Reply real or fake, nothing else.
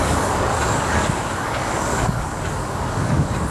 fake